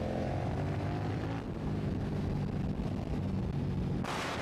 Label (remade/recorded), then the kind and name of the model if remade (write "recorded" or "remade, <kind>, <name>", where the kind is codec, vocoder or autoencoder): recorded